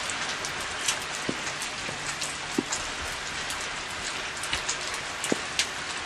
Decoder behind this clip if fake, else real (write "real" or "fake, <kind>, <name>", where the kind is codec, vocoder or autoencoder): real